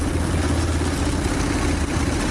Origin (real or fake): real